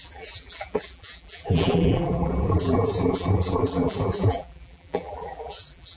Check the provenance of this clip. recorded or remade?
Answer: remade